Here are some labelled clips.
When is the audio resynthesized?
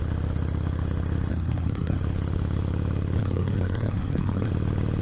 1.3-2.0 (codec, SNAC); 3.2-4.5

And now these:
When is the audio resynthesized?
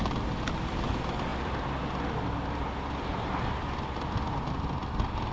none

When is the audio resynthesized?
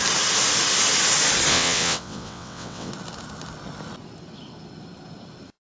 1.5-2.9 (vocoder, WaveNeXt)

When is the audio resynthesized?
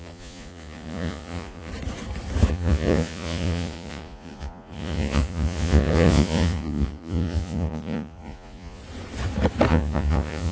0.0-1.7 (vocoder, Vocos); 2.5-8.8; 9.7-10.5